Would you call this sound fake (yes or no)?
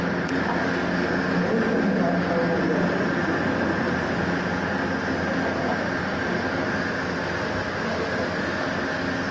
no